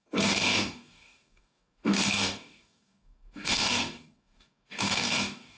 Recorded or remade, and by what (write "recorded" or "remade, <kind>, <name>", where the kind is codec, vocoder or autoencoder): remade, codec, DAC